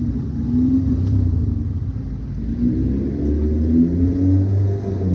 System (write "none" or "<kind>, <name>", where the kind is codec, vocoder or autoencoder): none